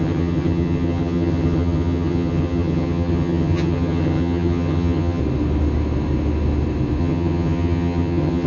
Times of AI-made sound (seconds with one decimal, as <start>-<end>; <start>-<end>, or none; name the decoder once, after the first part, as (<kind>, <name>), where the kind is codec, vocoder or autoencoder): 0.0-5.2 (vocoder, HiFi-GAN); 7.0-8.5